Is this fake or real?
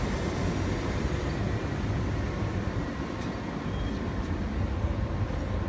real